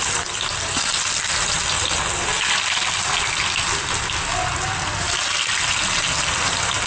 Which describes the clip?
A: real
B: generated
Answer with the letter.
A